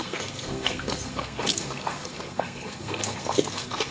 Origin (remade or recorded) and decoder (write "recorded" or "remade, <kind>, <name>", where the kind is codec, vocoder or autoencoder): remade, codec, SNAC